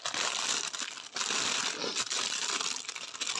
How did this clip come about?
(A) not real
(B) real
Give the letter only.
A